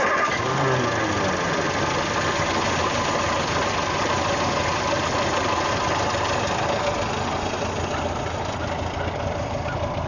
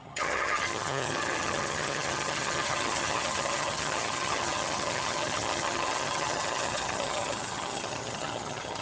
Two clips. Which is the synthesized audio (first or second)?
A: second